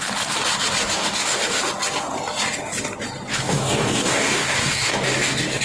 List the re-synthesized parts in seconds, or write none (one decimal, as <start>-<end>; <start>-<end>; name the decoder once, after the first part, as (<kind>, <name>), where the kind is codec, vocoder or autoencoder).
0.8-1.6 (codec, DAC); 3.3-5.6